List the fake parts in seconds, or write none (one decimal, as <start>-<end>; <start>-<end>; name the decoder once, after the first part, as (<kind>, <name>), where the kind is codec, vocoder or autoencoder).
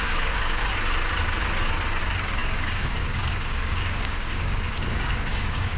0.0-0.6 (codec, DAC); 2.0-5.8